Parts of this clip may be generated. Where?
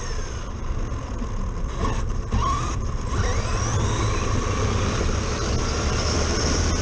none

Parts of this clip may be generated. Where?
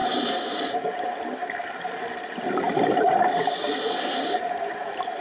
0.0-1.0 (vocoder, BigVGAN v2); 1.6-2.2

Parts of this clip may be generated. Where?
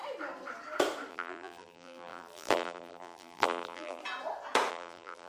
1.1-4.0 (vocoder, BigVGAN v2); 4.7-5.3